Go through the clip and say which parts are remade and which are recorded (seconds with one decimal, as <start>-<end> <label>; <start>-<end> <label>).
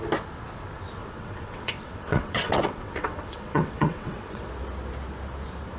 0.0-1.0 recorded; 1.0-4.5 remade; 4.5-5.8 recorded